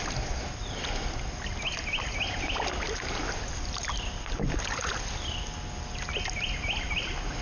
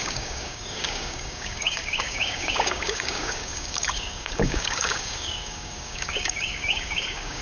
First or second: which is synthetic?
second